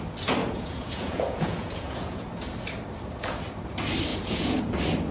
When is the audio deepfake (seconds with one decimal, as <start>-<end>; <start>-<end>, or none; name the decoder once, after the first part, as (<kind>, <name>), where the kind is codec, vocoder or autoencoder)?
0.4-2.3 (vocoder, Vocos); 4.1-4.6

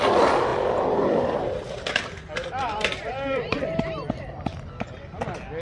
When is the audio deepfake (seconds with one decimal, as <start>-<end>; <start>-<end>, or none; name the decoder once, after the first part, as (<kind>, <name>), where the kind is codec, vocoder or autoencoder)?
none